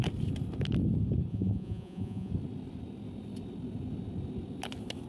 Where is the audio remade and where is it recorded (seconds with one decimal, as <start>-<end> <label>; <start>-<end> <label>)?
0.0-1.3 recorded; 1.3-2.3 remade; 2.3-5.1 recorded